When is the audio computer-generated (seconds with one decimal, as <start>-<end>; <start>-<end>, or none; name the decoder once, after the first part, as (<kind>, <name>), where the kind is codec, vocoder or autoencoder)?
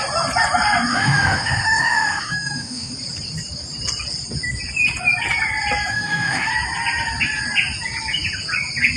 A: 0.9-2.9 (autoencoder, DAC-VAE); 5.9-6.5